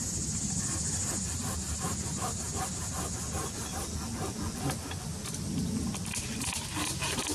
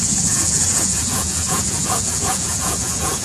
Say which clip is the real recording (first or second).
first